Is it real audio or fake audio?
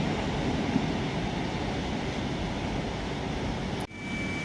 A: real